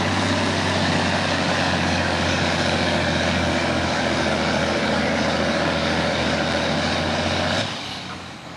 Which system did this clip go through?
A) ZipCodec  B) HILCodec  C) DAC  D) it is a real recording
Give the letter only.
C